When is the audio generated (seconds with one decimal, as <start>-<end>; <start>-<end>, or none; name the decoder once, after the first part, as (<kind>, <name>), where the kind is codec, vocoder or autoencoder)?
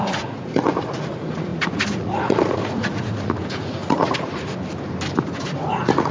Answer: 0.0-4.5 (vocoder, Vocos); 5.2-6.1